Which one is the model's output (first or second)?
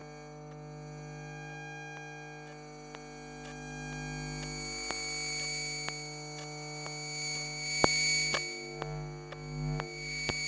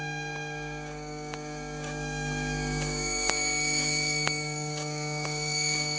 second